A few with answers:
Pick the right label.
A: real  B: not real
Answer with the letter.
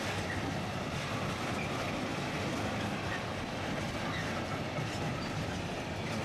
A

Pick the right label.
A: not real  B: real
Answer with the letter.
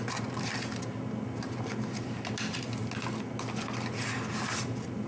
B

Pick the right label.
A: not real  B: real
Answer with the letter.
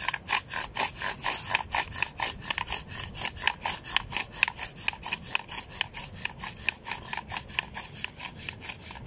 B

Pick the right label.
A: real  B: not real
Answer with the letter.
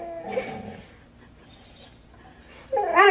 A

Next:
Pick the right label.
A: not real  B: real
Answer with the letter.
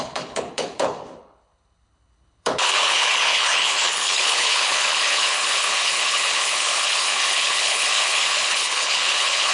A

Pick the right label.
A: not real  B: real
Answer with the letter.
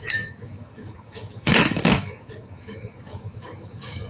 A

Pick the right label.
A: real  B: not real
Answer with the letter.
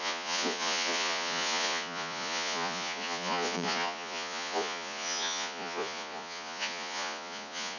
B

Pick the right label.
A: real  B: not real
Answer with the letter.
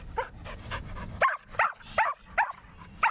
A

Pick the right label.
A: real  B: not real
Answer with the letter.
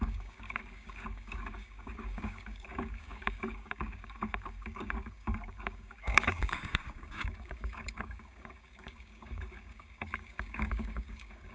B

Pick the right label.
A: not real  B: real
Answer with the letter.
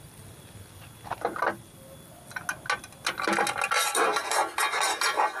B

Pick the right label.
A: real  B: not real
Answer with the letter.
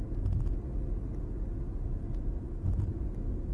A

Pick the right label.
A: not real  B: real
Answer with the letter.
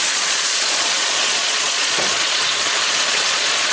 A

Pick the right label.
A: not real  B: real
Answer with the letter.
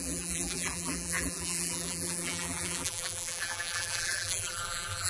A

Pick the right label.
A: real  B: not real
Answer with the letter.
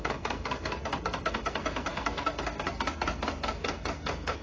B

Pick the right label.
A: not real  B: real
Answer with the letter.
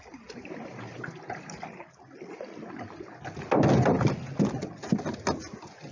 B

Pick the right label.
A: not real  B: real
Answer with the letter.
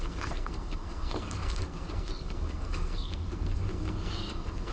A